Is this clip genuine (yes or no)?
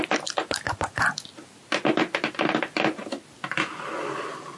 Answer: yes